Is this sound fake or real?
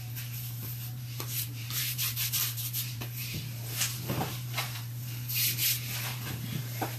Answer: fake